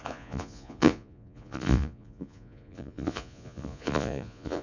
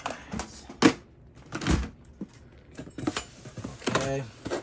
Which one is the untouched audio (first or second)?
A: second